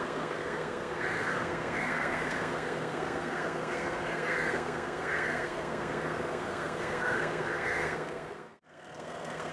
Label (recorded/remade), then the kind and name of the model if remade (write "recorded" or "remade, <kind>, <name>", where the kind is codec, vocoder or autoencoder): remade, codec, SNAC